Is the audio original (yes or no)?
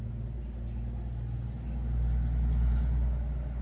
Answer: yes